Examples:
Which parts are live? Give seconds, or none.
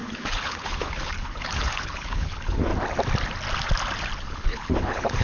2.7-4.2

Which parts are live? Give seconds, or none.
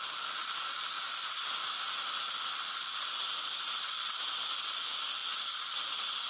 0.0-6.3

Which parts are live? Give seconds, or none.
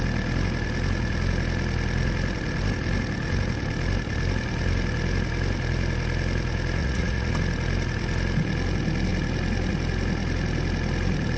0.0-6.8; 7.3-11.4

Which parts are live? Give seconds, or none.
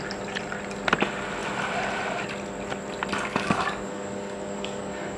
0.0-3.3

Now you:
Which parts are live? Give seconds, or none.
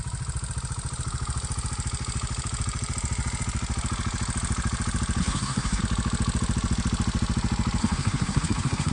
0.0-5.2; 5.8-7.8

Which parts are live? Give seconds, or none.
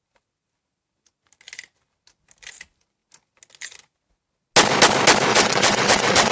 0.0-5.3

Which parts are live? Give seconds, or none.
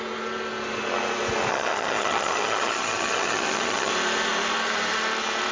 0.0-1.5; 3.9-5.5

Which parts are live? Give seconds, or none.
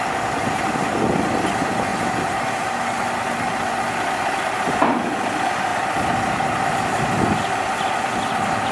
0.0-8.7